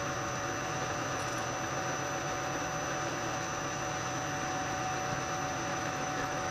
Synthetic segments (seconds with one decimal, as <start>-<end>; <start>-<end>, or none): 5.7-6.5